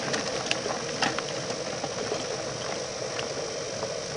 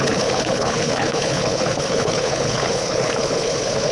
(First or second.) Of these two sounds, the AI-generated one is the second